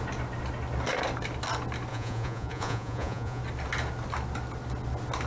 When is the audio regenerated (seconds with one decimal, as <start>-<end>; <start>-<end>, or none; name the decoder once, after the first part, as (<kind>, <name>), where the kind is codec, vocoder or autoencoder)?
1.9-3.4 (vocoder, Vocos)